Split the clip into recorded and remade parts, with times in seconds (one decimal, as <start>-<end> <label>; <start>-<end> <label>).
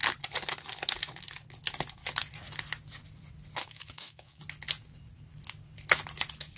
0.0-3.6 recorded; 3.6-4.4 remade; 4.4-6.6 recorded